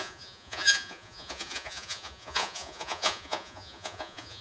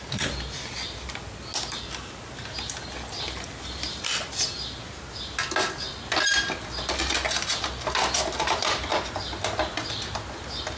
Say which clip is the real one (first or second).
second